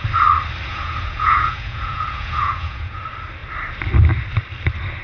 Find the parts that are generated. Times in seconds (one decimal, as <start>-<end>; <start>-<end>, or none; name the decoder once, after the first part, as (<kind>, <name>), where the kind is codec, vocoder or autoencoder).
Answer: 0.7-3.0 (vocoder, Vocos)